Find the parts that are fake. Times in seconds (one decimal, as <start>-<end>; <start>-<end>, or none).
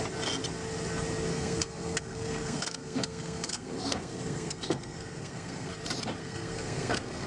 1.3-5.7; 6.2-7.3